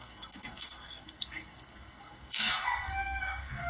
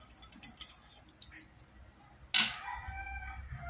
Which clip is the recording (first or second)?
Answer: second